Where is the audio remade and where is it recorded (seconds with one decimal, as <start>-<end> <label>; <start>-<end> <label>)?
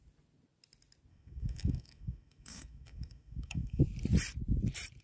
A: 0.0-1.1 recorded; 1.1-3.8 remade; 3.8-5.0 recorded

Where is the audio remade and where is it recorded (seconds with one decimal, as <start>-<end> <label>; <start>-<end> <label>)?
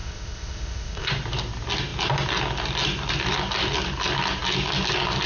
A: 0.0-1.1 remade; 1.1-5.3 recorded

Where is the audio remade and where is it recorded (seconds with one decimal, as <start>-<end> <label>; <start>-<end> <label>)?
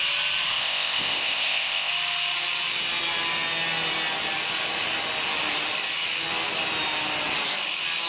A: 0.0-0.5 recorded; 0.5-1.9 remade; 1.9-8.1 recorded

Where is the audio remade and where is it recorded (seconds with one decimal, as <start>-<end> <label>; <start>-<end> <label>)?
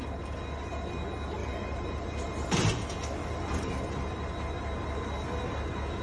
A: 0.0-1.4 recorded; 1.4-2.7 remade; 2.7-3.2 recorded; 3.2-4.3 remade; 4.3-6.0 recorded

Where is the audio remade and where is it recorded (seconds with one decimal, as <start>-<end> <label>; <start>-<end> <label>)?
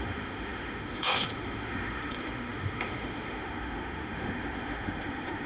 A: 0.0-5.5 remade